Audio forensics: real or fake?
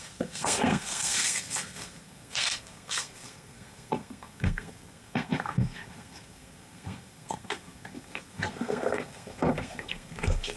fake